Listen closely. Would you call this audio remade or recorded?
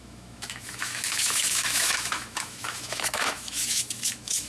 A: remade